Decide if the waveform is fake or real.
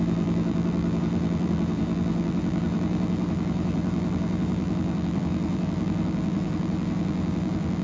fake